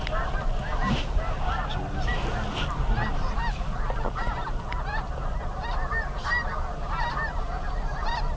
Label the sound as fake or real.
real